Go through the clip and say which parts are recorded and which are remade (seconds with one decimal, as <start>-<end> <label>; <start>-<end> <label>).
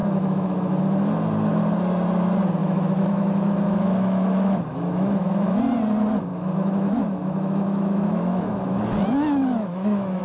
0.0-0.8 remade; 0.8-2.6 recorded; 2.6-5.6 remade; 5.6-6.3 recorded; 6.3-8.8 remade; 8.8-9.4 recorded; 9.4-10.2 remade